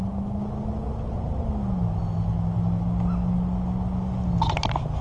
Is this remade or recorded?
recorded